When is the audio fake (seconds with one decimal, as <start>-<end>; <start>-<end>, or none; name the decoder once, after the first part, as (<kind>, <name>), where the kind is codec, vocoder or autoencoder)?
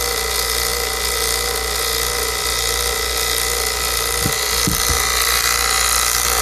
none